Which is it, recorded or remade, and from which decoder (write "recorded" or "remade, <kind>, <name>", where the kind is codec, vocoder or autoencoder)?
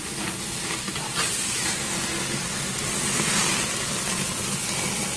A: recorded